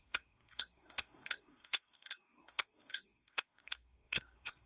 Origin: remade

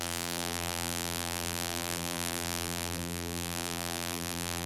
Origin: remade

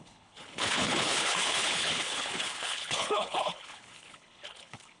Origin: remade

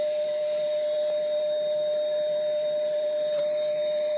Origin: remade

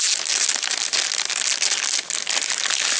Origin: recorded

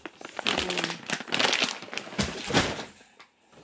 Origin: recorded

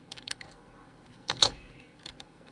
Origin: remade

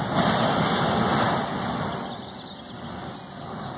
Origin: recorded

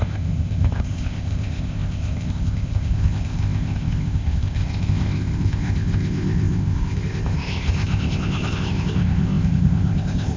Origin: remade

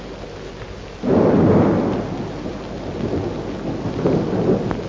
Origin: recorded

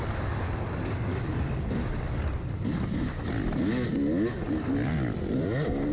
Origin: recorded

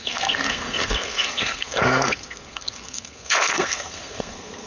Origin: remade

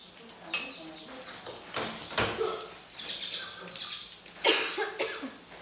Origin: recorded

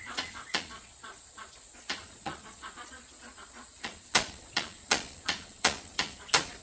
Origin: remade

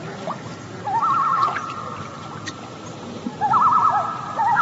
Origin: recorded